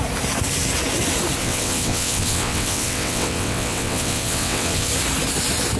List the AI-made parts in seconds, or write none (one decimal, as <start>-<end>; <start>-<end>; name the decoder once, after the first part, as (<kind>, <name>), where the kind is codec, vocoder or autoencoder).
1.4-4.9 (vocoder, WaveNeXt)